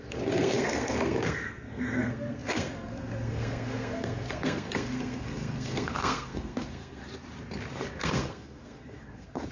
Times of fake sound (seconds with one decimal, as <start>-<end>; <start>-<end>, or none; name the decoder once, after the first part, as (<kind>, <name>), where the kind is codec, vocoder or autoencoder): 0.0-7.0 (codec, SNAC); 8.0-9.5